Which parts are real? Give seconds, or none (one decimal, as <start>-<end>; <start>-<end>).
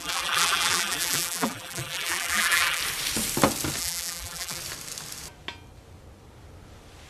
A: 2.8-3.8; 4.6-7.1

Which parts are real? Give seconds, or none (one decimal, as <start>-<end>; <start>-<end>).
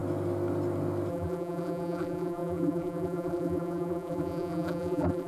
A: 0.0-1.1